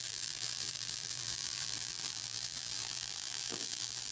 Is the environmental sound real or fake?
fake